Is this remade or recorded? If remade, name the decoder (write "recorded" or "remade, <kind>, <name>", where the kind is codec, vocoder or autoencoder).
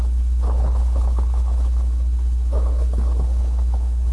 remade, codec, HILCodec